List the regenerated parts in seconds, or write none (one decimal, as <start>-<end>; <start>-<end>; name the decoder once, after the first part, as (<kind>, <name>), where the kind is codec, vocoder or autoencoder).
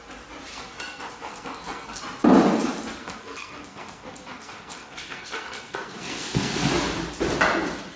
0.5-2.0 (codec, SNAC); 3.0-6.7